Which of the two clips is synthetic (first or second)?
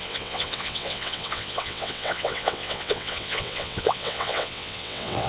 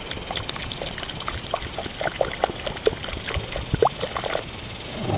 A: first